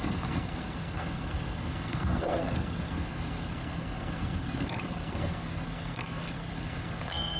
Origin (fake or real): fake